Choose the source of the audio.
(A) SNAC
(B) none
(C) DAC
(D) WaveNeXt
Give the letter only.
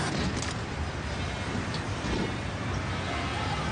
B